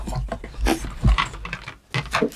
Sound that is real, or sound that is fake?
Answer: real